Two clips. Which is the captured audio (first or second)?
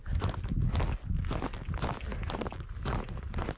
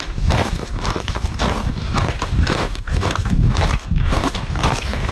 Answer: first